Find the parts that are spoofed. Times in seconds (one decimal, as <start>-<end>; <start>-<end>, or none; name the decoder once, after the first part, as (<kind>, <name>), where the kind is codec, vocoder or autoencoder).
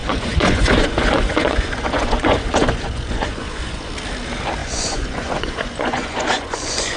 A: 0.0-3.9 (vocoder, Vocos); 4.6-7.0